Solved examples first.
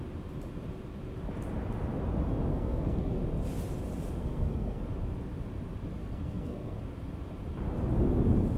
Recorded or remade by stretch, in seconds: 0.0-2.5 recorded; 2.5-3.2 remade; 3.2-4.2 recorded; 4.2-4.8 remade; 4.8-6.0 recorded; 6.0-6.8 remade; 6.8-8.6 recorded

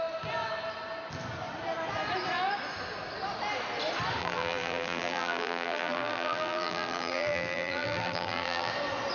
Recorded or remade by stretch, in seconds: 0.0-4.2 recorded; 4.2-8.7 remade; 8.7-9.1 recorded

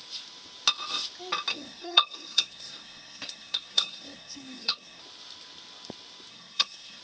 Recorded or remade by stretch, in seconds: 0.0-1.5 recorded; 1.5-5.0 remade; 5.0-6.3 recorded; 6.3-7.0 remade

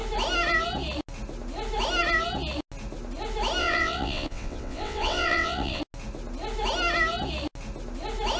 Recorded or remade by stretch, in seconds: 0.0-3.6 recorded; 3.6-5.8 remade; 5.8-8.4 recorded